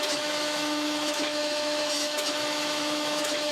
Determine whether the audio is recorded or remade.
remade